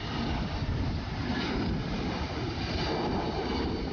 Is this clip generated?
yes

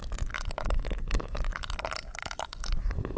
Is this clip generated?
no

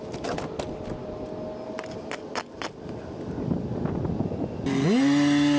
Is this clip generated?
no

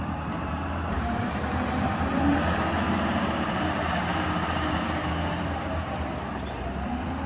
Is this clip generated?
yes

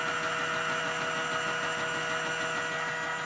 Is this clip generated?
no